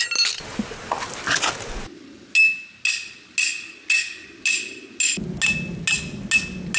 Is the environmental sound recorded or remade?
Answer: recorded